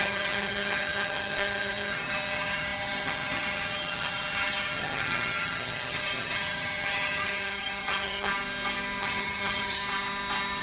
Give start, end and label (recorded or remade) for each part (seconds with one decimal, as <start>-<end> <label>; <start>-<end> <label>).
0.0-8.3 remade; 8.3-9.0 recorded; 9.0-9.8 remade; 9.8-10.6 recorded